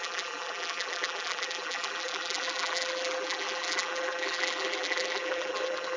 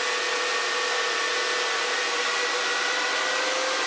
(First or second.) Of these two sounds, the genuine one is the second